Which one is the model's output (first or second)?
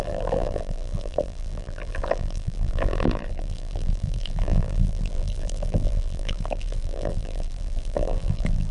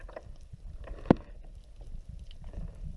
first